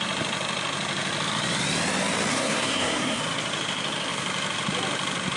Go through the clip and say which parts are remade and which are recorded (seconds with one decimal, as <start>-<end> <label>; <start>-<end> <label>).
0.0-2.3 recorded; 2.3-3.2 remade; 3.2-5.4 recorded